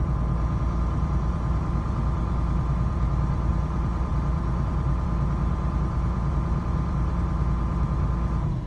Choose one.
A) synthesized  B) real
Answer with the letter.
A